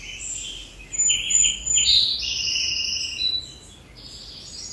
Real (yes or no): yes